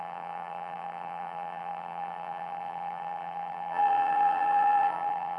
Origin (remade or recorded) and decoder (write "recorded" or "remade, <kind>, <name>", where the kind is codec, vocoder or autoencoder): remade, vocoder, BigVGAN v2